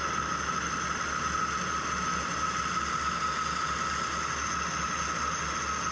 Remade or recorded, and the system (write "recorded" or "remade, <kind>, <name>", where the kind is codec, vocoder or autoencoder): recorded